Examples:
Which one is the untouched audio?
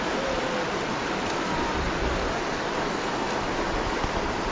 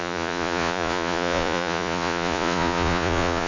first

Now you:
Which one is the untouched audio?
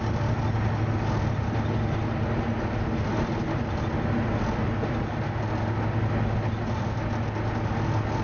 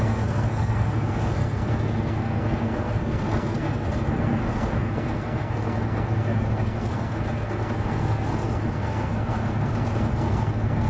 first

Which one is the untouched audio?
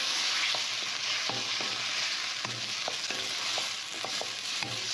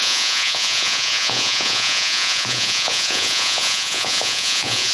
first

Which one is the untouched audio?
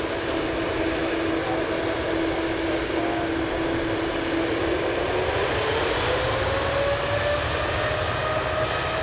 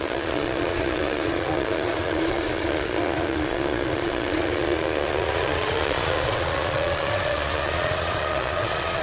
first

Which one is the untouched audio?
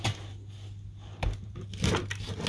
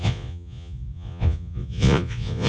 first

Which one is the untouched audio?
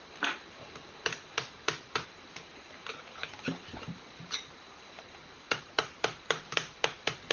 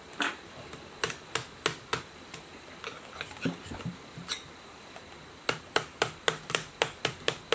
second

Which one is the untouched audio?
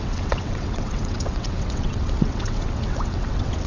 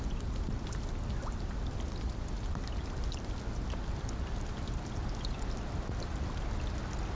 second